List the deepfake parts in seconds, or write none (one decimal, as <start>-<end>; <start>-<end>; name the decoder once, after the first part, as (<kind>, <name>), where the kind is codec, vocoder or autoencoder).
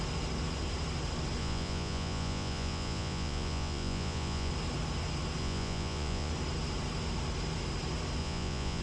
1.4-4.5 (vocoder, Vocos); 5.4-6.3; 8.2-8.8